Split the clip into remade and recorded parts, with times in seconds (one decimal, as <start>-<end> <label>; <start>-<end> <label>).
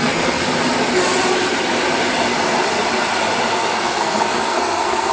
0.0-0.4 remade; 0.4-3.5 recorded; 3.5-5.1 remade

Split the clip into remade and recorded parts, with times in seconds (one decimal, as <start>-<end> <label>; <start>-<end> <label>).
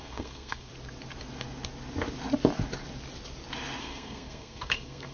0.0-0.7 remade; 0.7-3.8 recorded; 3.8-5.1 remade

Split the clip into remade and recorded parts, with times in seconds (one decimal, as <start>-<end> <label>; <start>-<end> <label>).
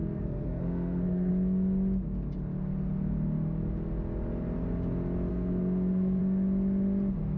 0.0-1.3 remade; 1.3-5.3 recorded; 5.3-6.2 remade; 6.2-7.4 recorded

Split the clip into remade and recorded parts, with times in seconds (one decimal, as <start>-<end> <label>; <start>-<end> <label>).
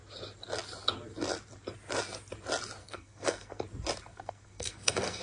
0.0-2.8 recorded; 2.8-3.6 remade; 3.6-4.1 recorded; 4.1-5.2 remade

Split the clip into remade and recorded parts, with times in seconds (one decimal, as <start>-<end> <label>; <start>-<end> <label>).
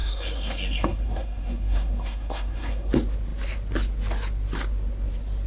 0.0-2.9 remade; 2.9-5.5 recorded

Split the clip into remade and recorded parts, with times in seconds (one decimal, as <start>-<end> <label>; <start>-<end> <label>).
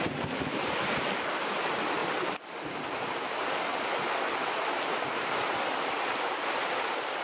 0.0-7.2 recorded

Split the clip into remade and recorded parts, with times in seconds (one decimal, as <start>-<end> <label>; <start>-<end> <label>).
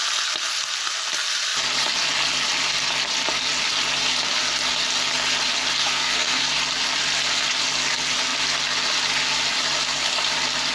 0.0-5.8 recorded; 5.8-6.4 remade; 6.4-10.7 recorded